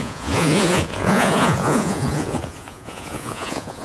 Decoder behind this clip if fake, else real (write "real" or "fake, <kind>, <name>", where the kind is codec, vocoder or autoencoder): fake, vocoder, Vocos